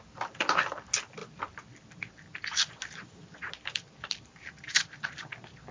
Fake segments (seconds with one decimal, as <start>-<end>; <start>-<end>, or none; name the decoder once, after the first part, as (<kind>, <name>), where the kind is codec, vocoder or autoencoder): none